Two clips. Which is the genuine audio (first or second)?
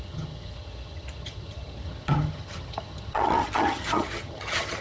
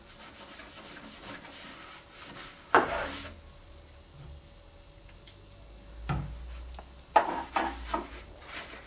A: second